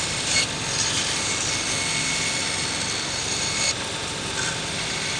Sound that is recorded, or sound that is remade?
recorded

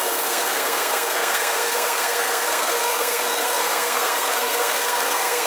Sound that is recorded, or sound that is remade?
remade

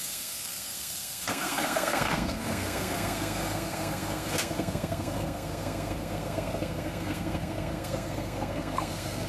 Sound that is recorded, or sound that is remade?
remade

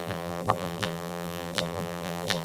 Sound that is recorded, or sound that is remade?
remade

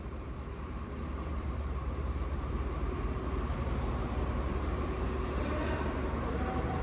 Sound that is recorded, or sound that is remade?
remade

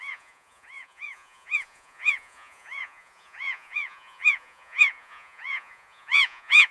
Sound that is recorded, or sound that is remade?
remade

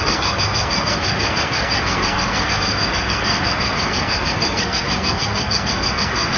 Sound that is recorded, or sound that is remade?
remade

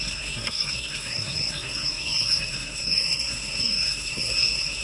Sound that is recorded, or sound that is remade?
remade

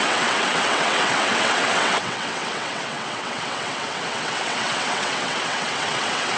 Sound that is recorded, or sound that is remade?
remade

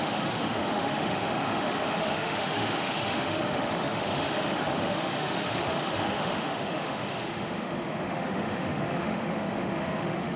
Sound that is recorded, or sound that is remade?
remade